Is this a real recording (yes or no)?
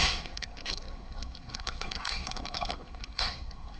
no